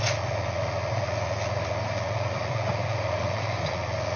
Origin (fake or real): fake